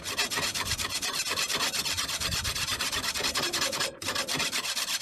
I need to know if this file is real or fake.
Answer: fake